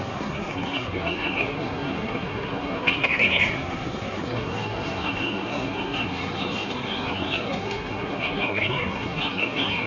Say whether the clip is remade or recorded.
remade